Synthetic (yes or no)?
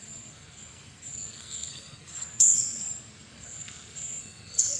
yes